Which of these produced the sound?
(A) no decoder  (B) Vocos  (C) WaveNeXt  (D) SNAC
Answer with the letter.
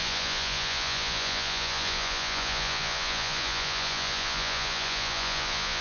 B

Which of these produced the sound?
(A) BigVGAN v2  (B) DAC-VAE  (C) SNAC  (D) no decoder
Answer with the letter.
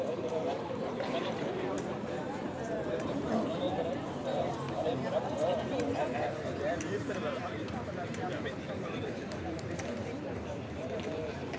A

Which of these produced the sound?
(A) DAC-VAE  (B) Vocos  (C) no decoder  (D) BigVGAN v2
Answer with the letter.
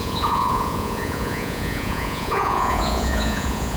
B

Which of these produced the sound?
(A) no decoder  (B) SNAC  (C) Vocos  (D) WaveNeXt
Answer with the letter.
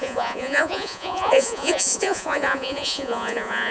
C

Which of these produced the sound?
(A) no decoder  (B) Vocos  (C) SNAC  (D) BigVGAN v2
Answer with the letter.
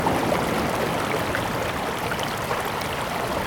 D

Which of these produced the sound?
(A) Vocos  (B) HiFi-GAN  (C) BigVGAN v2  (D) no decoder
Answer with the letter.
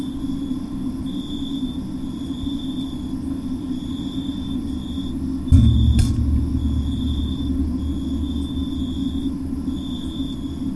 D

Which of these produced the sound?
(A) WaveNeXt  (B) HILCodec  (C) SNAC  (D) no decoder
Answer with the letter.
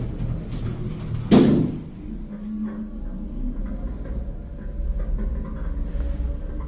D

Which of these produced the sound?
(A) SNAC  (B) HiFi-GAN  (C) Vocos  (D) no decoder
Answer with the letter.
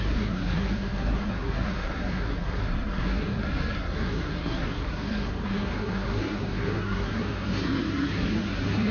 A